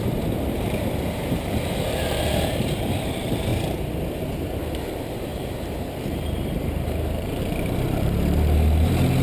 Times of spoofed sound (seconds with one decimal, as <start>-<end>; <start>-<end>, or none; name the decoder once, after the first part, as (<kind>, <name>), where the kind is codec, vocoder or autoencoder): 0.0-3.5 (vocoder, BigVGAN v2); 4.6-9.2